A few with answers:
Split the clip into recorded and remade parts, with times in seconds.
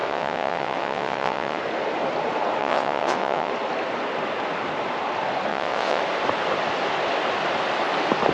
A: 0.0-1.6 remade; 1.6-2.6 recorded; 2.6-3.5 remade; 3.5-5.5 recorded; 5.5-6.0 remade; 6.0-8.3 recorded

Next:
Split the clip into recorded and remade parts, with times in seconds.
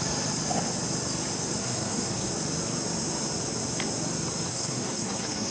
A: 0.0-1.6 recorded; 1.6-2.3 remade; 2.3-4.5 recorded; 4.5-5.5 remade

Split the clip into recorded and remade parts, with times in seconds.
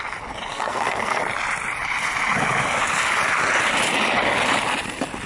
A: 0.0-0.5 recorded; 0.5-1.2 remade; 1.2-5.3 recorded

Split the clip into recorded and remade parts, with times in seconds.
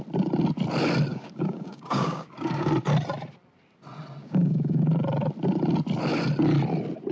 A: 0.0-1.1 recorded; 1.1-2.7 remade; 2.7-4.2 recorded; 4.2-4.8 remade; 4.8-7.1 recorded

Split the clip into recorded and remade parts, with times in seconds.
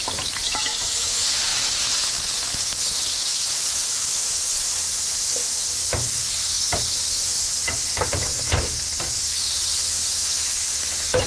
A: 0.0-11.3 remade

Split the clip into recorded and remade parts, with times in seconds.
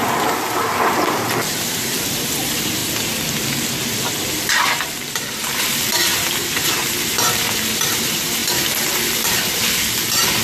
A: 0.0-2.8 remade; 2.8-5.1 recorded; 5.1-10.4 remade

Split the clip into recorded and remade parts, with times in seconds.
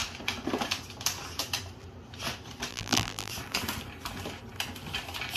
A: 0.0-2.7 recorded; 2.7-3.3 remade; 3.3-5.4 recorded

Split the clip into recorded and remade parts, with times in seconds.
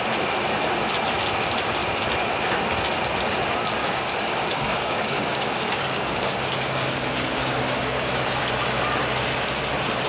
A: 0.0-3.8 recorded; 3.8-8.5 remade; 8.5-10.1 recorded